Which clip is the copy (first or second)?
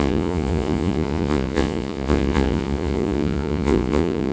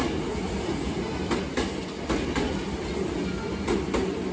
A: first